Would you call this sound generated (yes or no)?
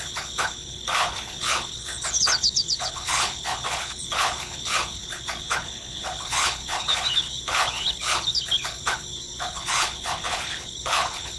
yes